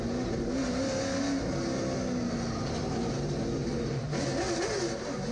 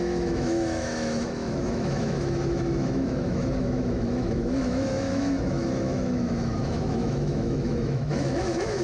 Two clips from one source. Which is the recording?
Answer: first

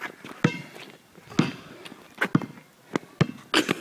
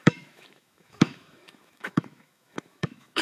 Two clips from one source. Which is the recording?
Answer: first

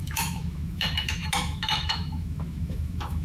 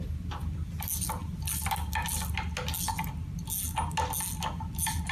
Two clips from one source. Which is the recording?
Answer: second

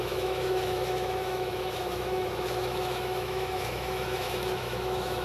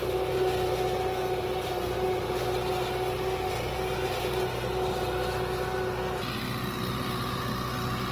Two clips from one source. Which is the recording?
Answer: second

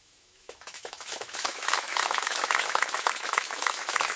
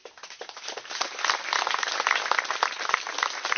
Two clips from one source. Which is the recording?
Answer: second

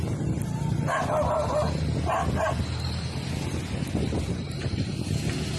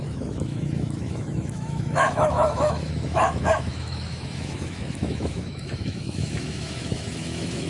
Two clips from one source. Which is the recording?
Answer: first